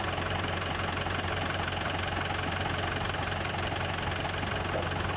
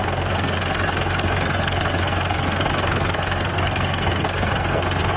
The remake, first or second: second